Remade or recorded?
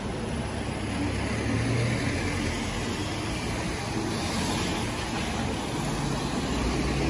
recorded